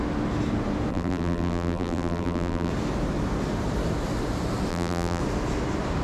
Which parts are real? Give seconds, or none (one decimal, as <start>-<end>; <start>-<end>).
0.0-0.9; 2.7-4.7; 5.2-6.0